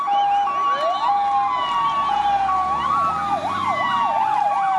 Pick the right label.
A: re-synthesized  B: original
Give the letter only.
B